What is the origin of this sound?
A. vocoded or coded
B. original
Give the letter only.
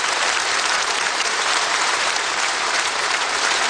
A